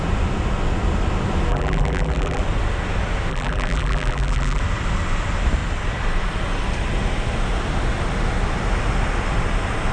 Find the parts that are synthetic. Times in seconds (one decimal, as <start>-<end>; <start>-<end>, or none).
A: 1.5-2.4; 3.3-4.6